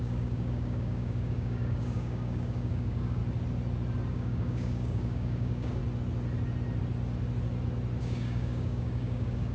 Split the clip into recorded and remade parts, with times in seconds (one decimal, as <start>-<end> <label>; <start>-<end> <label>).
0.0-3.2 remade; 3.2-4.1 recorded; 4.1-5.8 remade; 5.8-8.0 recorded; 8.0-9.5 remade